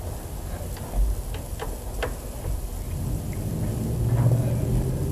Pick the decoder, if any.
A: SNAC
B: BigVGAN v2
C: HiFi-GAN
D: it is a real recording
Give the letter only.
D